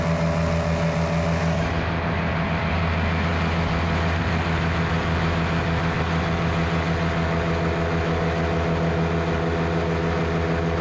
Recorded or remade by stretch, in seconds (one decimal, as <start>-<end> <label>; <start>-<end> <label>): 0.0-10.8 recorded